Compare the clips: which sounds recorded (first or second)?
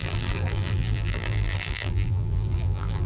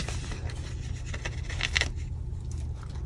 second